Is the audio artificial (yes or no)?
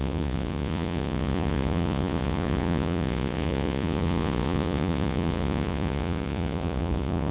yes